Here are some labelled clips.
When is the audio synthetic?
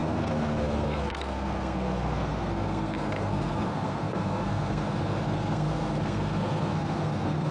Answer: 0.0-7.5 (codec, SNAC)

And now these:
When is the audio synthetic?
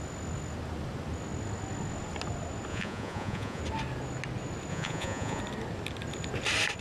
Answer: 2.7-3.6 (vocoder, Vocos); 4.7-5.4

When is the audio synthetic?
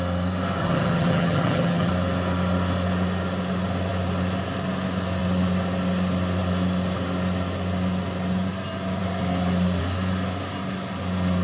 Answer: 0.6-1.9 (vocoder, HiFi-GAN)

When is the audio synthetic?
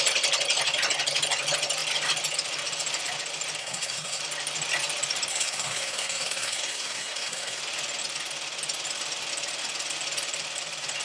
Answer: 3.6-4.2 (codec, SNAC); 5.3-7.6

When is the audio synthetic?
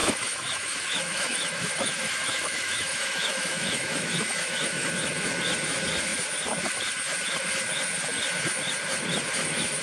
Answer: 0.0-4.9 (autoencoder, DAC-VAE)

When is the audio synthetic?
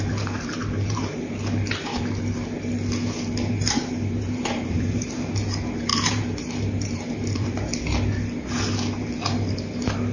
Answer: 0.0-1.9 (vocoder, BigVGAN v2); 3.5-7.7; 9.5-10.1